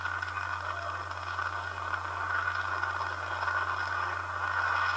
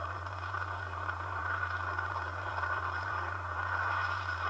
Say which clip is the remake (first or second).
second